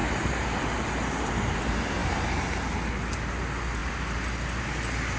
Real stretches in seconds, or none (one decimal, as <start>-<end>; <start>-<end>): 1.6-5.2